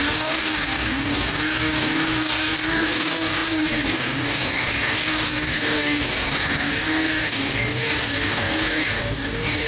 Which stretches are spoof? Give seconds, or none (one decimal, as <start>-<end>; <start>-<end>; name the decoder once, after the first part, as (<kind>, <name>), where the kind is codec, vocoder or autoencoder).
0.0-9.7 (codec, DAC)